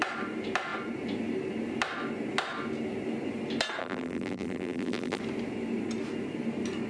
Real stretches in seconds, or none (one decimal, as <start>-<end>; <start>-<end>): 0.0-3.8; 5.2-6.9